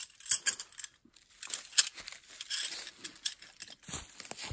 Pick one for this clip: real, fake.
real